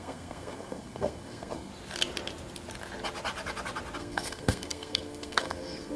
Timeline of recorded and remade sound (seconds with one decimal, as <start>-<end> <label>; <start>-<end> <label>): 0.0-1.7 remade; 1.7-4.0 recorded; 4.0-6.0 remade